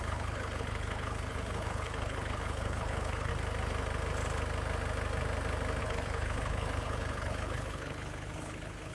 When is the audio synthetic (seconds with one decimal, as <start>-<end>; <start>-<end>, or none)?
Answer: 0.0-3.3; 5.8-8.9